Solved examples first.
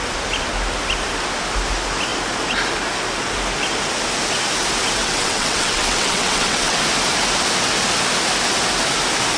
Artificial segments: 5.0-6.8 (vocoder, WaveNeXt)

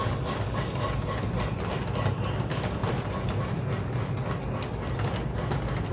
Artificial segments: none

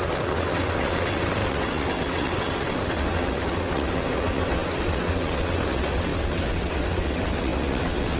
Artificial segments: 0.0-8.2 (vocoder, WaveNeXt)

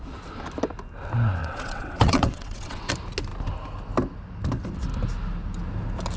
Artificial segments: 1.4-2.9 (vocoder, WaveNeXt)

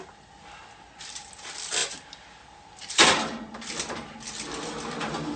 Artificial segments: none